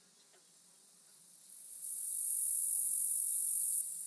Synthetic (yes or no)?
yes